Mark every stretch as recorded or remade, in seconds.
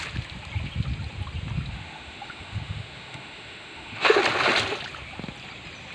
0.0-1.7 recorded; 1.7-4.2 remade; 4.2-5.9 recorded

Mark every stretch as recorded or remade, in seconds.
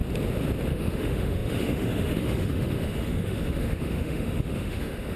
0.0-0.7 recorded; 0.7-5.2 remade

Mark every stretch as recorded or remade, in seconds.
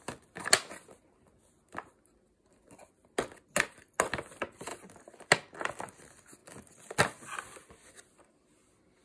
0.0-9.0 recorded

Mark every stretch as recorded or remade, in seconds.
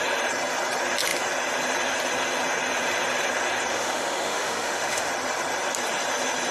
0.0-3.7 recorded; 3.7-5.1 remade; 5.1-6.5 recorded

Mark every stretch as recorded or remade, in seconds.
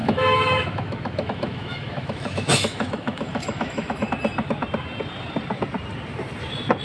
0.0-4.1 remade; 4.1-6.8 recorded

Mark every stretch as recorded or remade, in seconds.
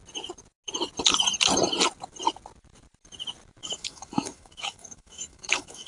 0.0-3.6 recorded; 3.6-5.9 remade